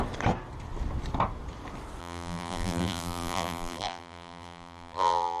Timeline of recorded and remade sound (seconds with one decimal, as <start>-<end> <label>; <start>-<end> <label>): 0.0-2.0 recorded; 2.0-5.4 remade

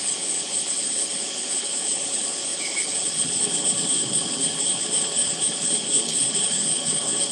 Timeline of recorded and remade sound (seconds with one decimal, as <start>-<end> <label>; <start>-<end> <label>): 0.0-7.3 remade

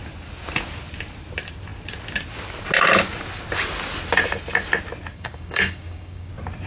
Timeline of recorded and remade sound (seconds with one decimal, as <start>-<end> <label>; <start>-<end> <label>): 0.0-5.1 recorded; 5.1-6.3 remade; 6.3-6.7 recorded

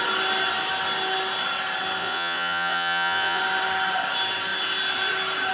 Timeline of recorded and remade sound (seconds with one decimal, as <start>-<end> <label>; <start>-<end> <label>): 0.0-2.0 recorded; 2.0-3.4 remade; 3.4-5.5 recorded

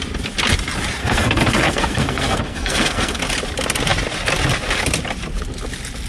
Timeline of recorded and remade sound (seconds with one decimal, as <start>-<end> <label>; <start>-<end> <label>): 0.0-1.0 recorded; 1.0-3.2 remade; 3.2-6.1 recorded

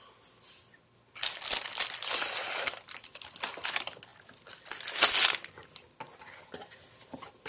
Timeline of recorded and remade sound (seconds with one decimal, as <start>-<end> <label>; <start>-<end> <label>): 0.0-7.5 recorded

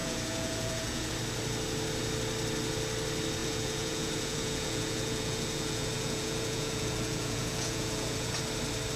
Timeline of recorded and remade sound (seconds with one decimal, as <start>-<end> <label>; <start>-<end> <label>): 0.0-1.1 remade; 1.1-3.4 recorded; 3.4-8.4 remade; 8.4-9.0 recorded

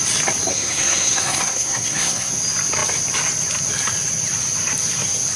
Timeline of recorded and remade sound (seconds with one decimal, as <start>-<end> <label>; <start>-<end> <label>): 0.0-0.5 recorded; 0.5-2.3 remade; 2.3-5.4 recorded